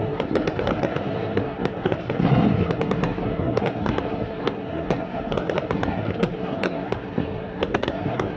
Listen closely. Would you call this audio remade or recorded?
remade